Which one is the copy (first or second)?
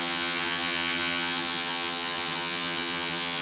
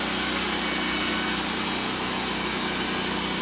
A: first